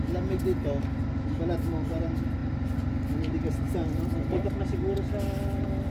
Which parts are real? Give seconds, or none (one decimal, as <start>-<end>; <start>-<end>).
0.0-5.9